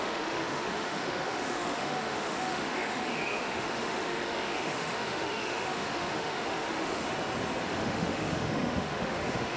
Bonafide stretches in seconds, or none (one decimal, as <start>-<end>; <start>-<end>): 7.1-7.6